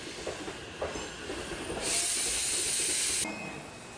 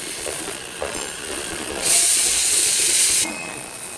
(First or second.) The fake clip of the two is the second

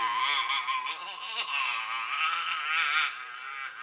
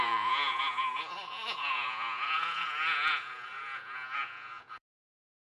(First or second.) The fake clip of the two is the second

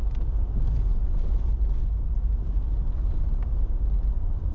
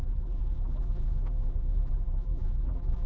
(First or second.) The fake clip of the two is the second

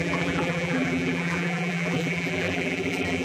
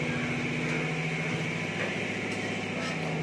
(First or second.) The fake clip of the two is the first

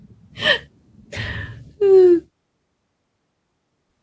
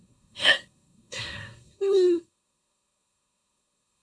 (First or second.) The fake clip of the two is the second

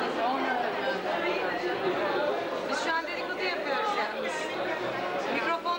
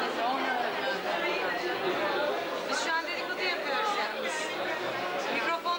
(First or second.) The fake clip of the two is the first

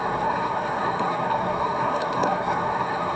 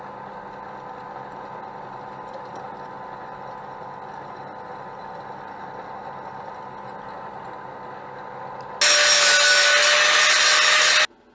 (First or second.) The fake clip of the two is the first